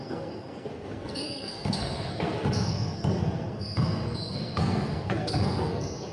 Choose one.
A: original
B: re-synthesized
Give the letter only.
B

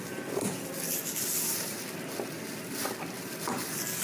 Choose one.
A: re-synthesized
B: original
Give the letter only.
B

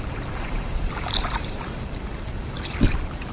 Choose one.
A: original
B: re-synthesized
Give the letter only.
A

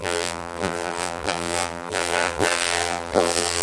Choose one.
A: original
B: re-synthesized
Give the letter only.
B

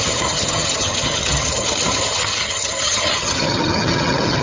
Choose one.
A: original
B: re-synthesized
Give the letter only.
B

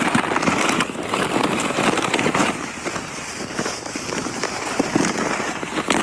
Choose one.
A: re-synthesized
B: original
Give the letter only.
A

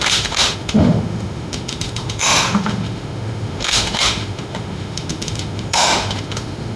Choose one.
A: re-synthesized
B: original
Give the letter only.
A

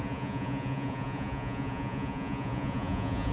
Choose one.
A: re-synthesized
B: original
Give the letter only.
A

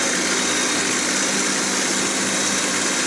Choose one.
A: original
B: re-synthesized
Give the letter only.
A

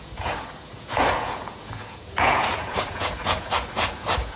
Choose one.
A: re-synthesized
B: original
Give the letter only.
A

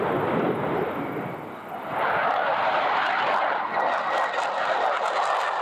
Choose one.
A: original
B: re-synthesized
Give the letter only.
A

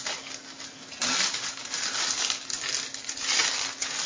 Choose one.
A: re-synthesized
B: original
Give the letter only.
B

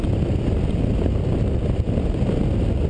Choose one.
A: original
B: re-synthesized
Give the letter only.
A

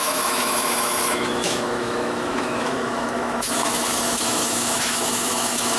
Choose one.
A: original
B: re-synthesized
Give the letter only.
B